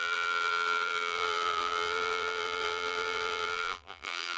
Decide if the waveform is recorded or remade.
remade